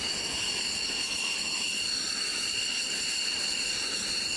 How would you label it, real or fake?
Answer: real